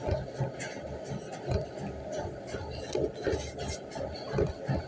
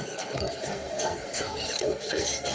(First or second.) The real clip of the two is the first